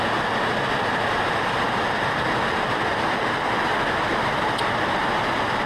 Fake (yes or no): no